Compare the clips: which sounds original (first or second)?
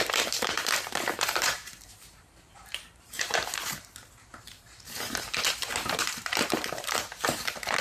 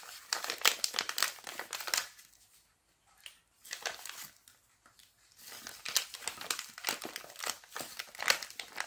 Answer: second